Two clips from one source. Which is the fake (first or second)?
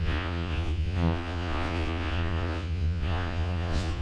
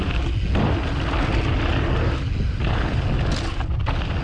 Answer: first